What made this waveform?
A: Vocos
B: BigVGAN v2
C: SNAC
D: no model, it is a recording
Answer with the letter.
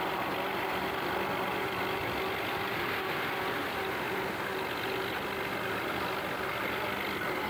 D